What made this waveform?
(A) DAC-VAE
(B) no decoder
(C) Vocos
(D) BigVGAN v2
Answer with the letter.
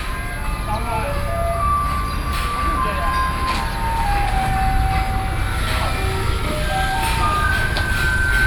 B